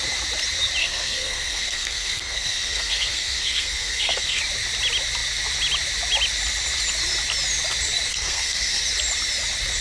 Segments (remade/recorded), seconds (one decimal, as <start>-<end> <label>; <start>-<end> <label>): 0.0-0.8 recorded; 0.8-4.4 remade; 4.4-8.1 recorded; 8.1-8.8 remade; 8.8-9.8 recorded